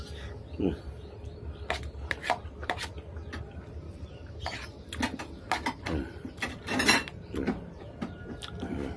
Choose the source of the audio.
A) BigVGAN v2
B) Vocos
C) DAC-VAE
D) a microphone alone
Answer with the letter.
D